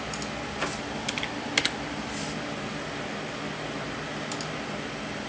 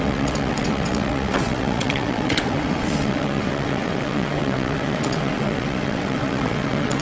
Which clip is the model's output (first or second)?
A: second